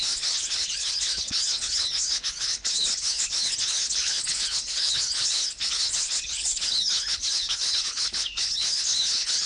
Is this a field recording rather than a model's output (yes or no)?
no